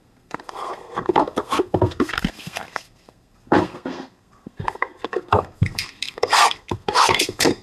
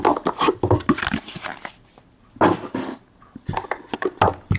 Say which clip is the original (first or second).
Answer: second